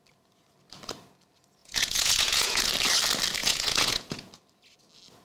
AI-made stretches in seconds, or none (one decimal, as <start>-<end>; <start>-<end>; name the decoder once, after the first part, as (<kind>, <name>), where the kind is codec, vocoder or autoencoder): 1.6-2.7 (vocoder, Vocos); 3.4-4.3